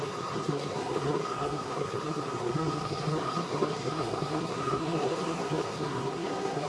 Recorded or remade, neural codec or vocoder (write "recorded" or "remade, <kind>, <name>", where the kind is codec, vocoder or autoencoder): remade, codec, SNAC